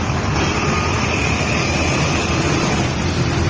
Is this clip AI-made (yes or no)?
no